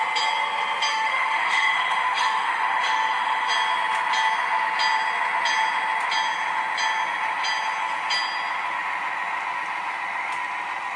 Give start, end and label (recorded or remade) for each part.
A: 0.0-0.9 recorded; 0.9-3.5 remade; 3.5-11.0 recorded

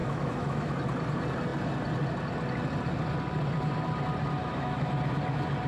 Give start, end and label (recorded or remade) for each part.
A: 0.0-0.7 remade; 0.7-4.4 recorded; 4.4-4.9 remade; 4.9-5.7 recorded

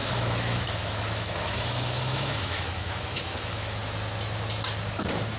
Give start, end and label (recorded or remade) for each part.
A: 0.0-3.8 remade; 3.8-5.4 recorded

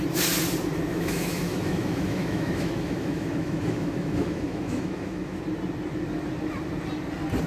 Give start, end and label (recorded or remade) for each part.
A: 0.0-0.9 recorded; 0.9-5.4 remade; 5.4-7.5 recorded

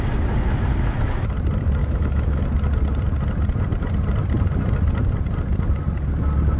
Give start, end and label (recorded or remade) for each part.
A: 0.0-1.8 recorded; 1.8-2.4 remade; 2.4-6.6 recorded

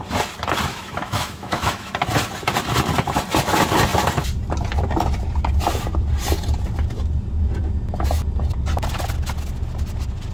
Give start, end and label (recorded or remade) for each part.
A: 0.0-0.7 recorded; 0.7-1.9 remade; 1.9-10.3 recorded